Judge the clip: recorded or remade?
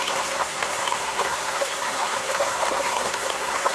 remade